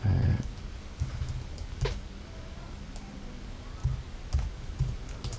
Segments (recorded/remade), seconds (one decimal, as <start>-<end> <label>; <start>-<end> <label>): 0.0-3.8 remade; 3.8-4.5 recorded; 4.5-5.4 remade